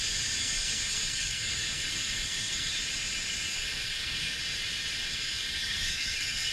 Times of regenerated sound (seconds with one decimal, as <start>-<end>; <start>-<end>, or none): 0.4-2.7; 3.5-4.4; 5.0-6.5